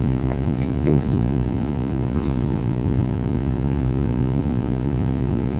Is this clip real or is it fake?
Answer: fake